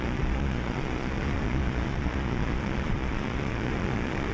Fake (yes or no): yes